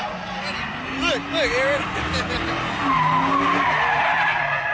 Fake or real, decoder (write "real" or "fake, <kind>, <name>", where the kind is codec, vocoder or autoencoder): real